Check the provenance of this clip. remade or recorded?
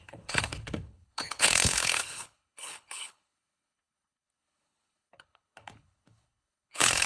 remade